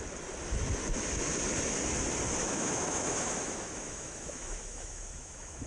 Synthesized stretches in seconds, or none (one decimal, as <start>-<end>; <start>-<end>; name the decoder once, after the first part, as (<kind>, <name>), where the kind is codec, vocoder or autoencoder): 2.4-5.7 (autoencoder, DAC-VAE)